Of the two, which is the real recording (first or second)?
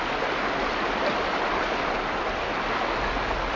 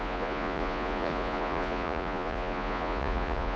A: first